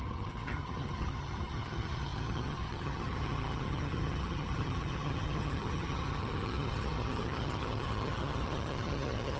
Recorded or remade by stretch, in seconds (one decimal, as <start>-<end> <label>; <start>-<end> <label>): 0.0-9.4 remade